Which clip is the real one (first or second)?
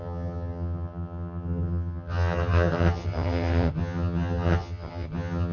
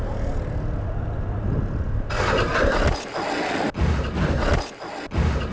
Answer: second